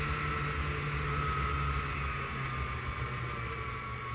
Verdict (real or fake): real